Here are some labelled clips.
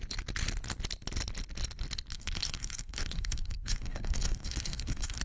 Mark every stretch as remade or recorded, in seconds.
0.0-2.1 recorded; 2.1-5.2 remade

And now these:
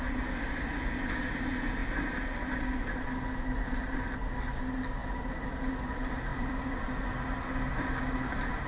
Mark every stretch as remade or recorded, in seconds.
0.0-6.3 recorded; 6.3-7.1 remade; 7.1-8.7 recorded

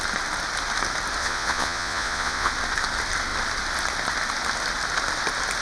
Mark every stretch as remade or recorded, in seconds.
0.0-1.2 recorded; 1.2-2.5 remade; 2.5-5.6 recorded

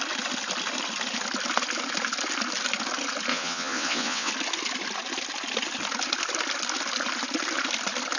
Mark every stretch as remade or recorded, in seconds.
0.0-3.3 recorded; 3.3-4.3 remade; 4.3-8.2 recorded

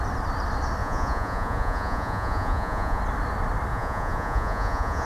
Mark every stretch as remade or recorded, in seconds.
0.0-0.8 recorded; 0.8-3.0 remade; 3.0-3.7 recorded; 3.7-5.1 remade

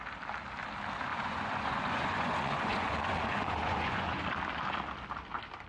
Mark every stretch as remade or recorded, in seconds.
0.0-1.1 recorded; 1.1-4.2 remade; 4.2-5.7 recorded